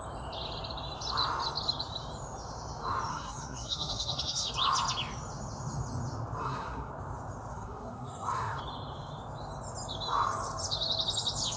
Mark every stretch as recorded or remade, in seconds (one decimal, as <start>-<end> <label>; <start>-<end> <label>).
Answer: 0.0-3.1 recorded; 3.1-4.5 remade; 4.5-6.4 recorded; 6.4-6.9 remade; 6.9-7.5 recorded; 7.5-8.6 remade; 8.6-11.6 recorded